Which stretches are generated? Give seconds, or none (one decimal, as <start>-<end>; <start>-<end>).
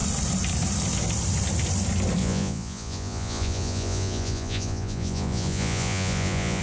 2.2-6.6